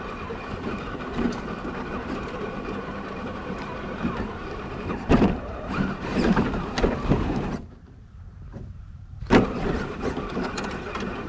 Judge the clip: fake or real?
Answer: fake